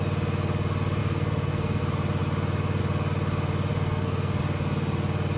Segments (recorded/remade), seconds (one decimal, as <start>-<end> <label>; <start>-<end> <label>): 0.0-1.0 recorded; 1.0-1.8 remade; 1.8-3.7 recorded; 3.7-4.4 remade; 4.4-5.4 recorded